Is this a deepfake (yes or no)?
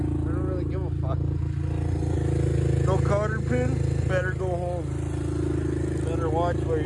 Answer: no